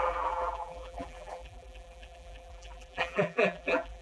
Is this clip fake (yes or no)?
yes